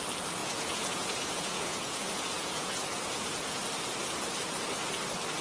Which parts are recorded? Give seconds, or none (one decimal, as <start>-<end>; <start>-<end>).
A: 0.0-0.4; 3.6-5.4